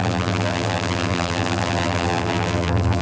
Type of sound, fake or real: fake